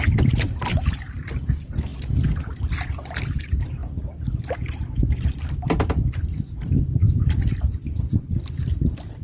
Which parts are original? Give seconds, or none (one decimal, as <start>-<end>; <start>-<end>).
1.9-2.9; 3.8-4.9